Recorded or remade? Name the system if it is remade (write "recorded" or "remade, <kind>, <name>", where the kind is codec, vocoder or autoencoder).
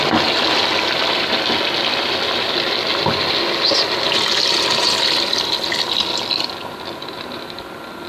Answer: recorded